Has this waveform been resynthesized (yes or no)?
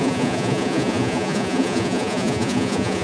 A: yes